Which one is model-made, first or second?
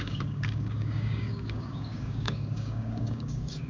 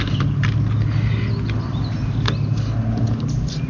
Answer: first